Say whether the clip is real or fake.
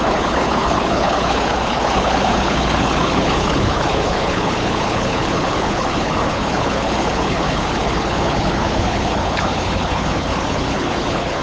fake